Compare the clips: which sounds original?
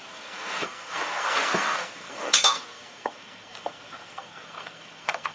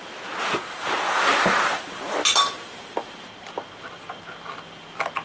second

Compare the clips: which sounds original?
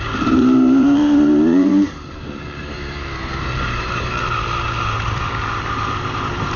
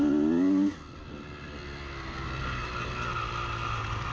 second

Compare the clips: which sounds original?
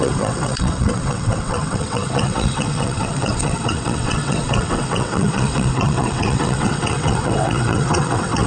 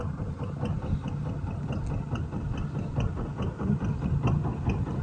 second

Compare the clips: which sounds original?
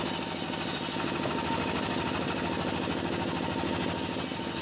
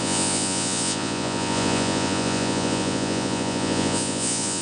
first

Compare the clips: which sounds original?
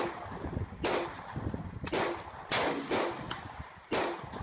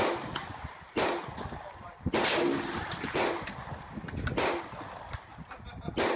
first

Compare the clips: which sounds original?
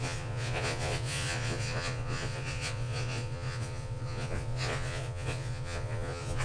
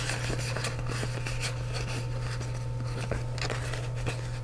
second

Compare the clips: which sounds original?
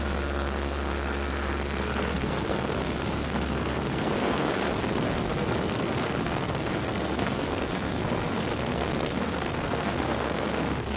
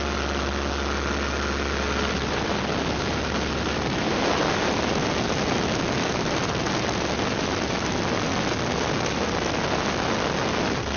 second